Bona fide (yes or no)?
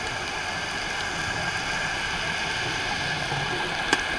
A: yes